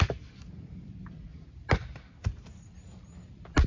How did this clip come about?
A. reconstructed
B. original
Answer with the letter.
B